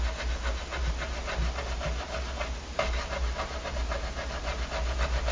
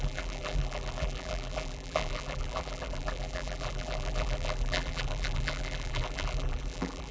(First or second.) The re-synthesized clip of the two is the second